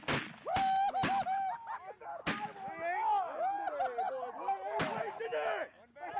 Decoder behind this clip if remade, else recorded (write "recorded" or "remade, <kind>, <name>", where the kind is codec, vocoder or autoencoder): recorded